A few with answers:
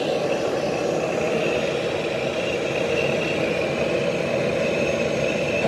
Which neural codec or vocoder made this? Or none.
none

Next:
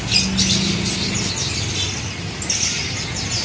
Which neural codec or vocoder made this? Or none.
none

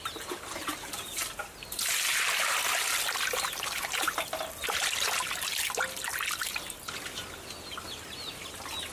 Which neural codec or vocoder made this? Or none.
none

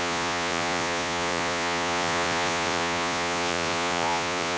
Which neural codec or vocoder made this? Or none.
vocoder, Vocos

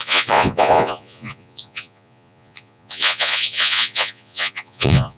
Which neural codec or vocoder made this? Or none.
vocoder, Vocos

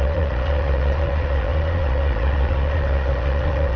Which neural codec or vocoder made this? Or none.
vocoder, Vocos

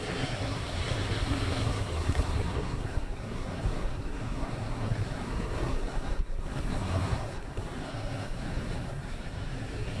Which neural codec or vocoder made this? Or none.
codec, SNAC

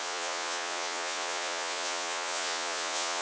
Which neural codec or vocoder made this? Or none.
vocoder, Vocos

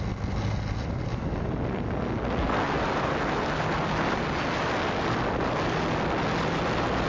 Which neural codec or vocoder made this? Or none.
none